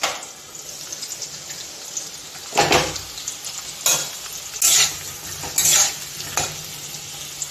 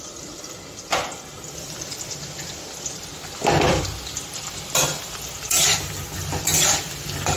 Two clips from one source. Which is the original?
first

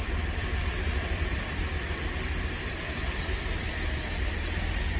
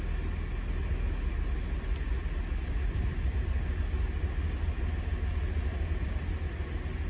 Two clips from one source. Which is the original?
second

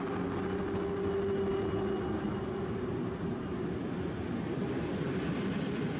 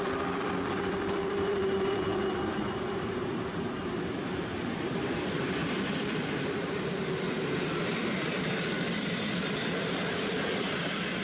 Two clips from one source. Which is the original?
first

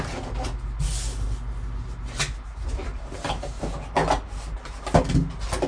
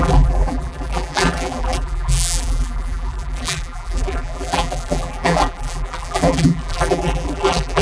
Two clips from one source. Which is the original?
first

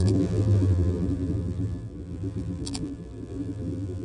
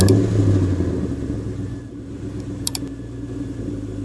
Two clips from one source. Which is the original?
second